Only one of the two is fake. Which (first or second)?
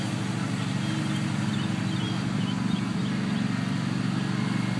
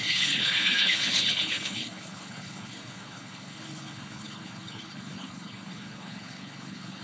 second